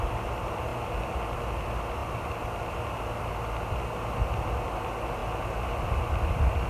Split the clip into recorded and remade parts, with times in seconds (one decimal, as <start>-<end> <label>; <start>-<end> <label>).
0.0-6.7 recorded